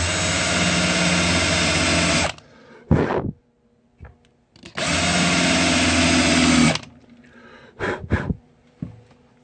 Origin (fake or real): real